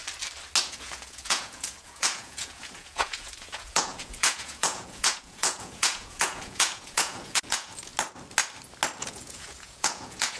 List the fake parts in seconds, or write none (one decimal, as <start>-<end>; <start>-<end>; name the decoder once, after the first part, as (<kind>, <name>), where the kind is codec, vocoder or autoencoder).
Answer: 0.6-7.9 (vocoder, Vocos); 9.0-10.4